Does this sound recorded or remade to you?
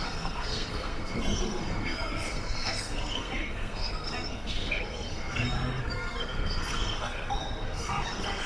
remade